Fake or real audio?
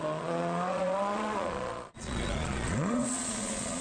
fake